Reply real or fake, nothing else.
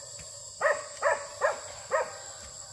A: real